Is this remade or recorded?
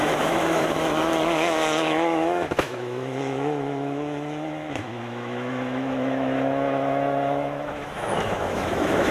remade